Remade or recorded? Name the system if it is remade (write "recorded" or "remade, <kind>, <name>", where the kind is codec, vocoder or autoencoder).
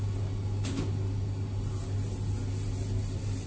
recorded